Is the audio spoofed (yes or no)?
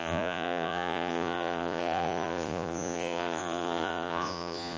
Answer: yes